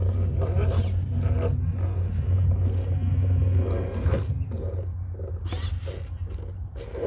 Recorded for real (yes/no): yes